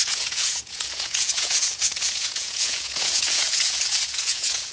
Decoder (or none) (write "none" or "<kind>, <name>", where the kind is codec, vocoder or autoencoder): vocoder, Vocos